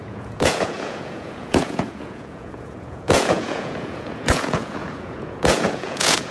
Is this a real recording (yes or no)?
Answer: no